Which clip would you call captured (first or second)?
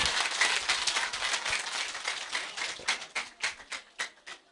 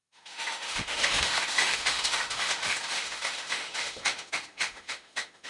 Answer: first